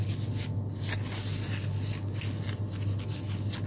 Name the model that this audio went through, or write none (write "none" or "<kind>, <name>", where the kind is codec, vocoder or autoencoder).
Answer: none